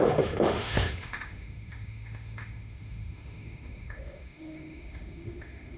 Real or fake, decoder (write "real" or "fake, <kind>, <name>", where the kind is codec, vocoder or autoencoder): fake, autoencoder, DAC-VAE